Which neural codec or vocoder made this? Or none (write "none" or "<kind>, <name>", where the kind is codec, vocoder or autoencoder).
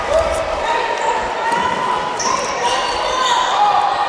none